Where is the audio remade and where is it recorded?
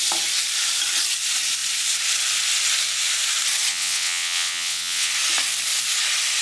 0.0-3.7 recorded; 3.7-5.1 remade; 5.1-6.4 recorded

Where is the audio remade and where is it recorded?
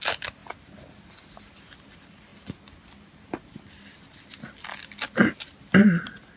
0.0-6.4 recorded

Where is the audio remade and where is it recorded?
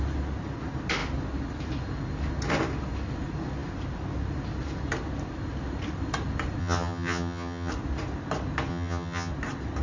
0.0-6.6 recorded; 6.6-7.7 remade; 7.7-8.7 recorded; 8.7-9.3 remade; 9.3-9.8 recorded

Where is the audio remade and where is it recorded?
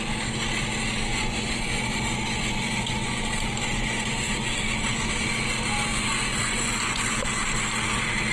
0.0-1.1 recorded; 1.1-5.1 remade; 5.1-5.9 recorded; 5.9-7.3 remade; 7.3-8.3 recorded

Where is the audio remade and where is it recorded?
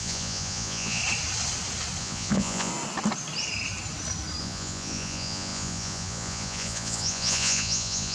0.0-1.0 remade; 1.0-2.0 recorded; 2.0-2.7 remade; 2.7-4.4 recorded; 4.4-8.1 remade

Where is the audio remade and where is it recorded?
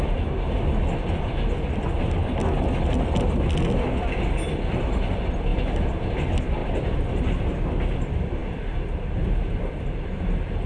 0.0-6.6 recorded; 6.6-7.5 remade; 7.5-8.4 recorded; 8.4-9.2 remade; 9.2-10.7 recorded